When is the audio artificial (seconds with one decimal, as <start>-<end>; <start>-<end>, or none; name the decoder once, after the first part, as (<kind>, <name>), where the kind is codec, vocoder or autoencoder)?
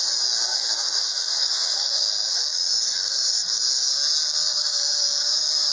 0.5-3.9 (autoencoder, DAC-VAE); 4.5-5.7